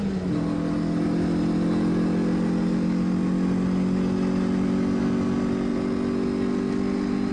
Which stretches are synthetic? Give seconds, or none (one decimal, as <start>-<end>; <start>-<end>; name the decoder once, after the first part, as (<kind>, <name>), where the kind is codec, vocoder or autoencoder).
none